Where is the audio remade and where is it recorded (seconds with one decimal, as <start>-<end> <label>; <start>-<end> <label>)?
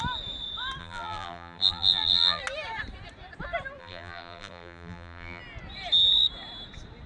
0.0-0.8 recorded; 0.8-2.4 remade; 2.4-3.8 recorded; 3.8-5.4 remade; 5.4-7.1 recorded